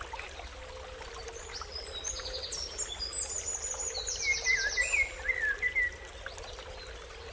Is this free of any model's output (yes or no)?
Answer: yes